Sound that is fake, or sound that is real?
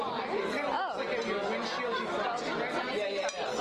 real